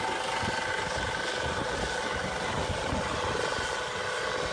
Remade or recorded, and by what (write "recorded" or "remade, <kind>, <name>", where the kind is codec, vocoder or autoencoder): recorded